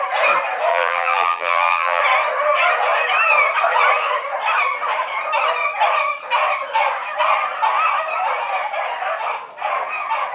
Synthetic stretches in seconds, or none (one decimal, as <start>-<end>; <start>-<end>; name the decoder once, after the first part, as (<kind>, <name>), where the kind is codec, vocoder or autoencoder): 0.7-2.0 (vocoder, BigVGAN v2)